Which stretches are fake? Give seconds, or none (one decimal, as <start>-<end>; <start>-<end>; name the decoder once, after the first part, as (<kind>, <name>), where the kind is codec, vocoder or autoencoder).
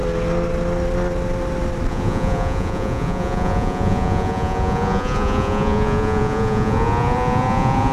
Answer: 1.9-7.9 (vocoder, Vocos)